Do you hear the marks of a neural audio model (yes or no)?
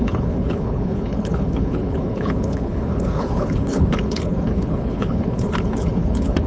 yes